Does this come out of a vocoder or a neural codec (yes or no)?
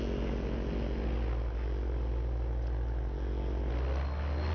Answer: no